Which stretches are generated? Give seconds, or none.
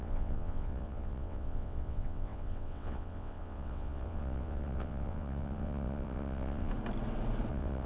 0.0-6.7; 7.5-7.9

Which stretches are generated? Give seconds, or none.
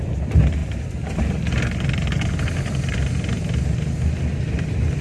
none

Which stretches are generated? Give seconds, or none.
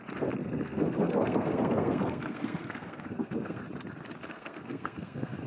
0.4-3.6; 4.3-5.5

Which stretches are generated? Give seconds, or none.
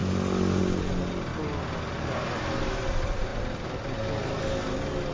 none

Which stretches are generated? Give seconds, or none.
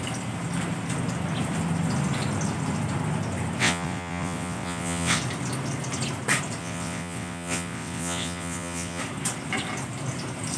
3.6-5.2; 6.6-9.0